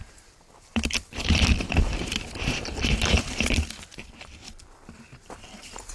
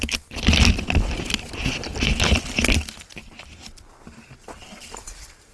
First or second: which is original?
second